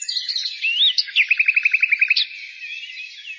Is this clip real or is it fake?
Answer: real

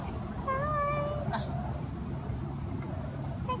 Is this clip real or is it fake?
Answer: real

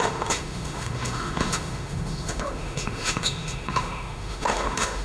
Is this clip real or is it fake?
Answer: fake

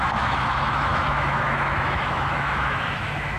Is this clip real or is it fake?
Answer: fake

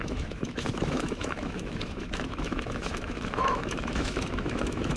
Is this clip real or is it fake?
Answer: fake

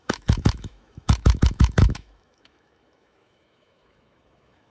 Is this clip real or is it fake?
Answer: fake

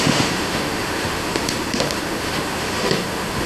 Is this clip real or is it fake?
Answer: fake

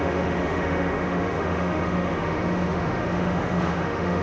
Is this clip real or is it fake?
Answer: fake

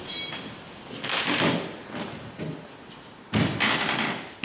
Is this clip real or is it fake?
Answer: real